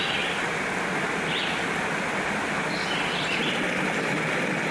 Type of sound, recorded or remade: recorded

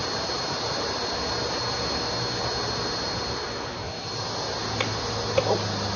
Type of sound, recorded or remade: recorded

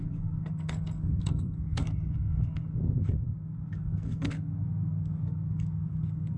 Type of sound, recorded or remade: remade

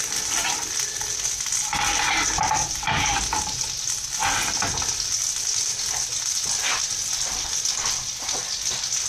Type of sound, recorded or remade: recorded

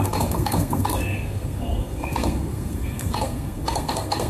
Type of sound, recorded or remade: remade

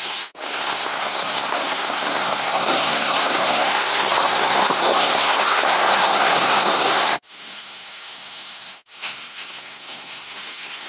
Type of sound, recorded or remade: remade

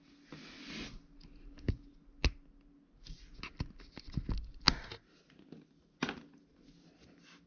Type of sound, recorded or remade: recorded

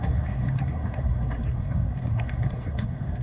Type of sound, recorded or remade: remade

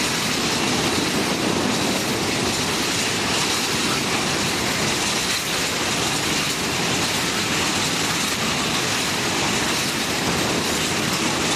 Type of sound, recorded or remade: recorded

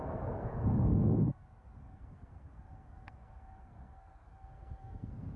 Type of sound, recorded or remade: remade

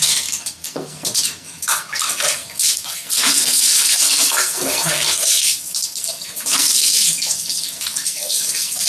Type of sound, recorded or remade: remade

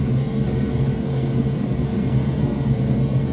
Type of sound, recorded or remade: remade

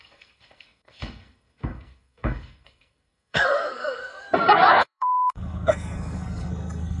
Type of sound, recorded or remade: remade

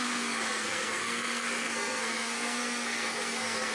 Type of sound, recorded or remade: remade